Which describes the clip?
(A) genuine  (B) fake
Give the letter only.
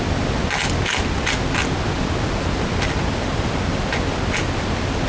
A